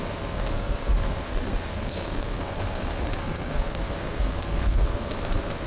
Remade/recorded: remade